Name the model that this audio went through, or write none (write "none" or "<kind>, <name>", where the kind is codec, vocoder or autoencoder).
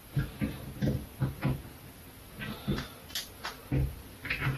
none